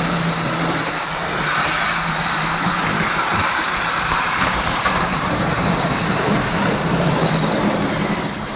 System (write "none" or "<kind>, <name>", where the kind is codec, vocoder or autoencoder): vocoder, BigVGAN v2